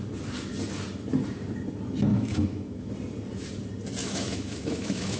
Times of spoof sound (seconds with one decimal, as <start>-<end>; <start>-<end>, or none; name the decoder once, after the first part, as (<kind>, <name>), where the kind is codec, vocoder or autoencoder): 2.1-2.9 (autoencoder, DAC-VAE); 4.0-5.2